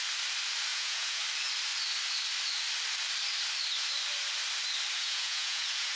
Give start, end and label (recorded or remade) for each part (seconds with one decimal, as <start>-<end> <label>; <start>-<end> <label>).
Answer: 0.0-0.7 recorded; 0.7-1.2 remade; 1.2-5.0 recorded; 5.0-6.0 remade

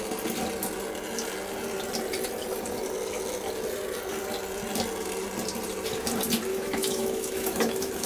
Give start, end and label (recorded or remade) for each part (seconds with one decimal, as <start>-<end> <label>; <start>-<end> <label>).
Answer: 0.0-6.5 recorded; 6.5-8.1 remade

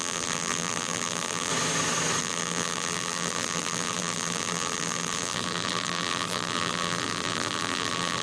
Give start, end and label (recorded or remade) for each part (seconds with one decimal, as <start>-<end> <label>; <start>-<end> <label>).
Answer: 0.0-1.5 remade; 1.5-2.2 recorded; 2.2-8.2 remade

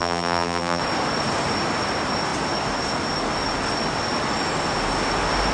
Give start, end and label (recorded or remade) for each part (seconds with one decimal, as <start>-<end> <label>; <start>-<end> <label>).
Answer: 0.0-0.8 remade; 0.8-5.5 recorded